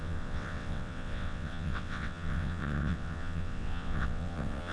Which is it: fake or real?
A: fake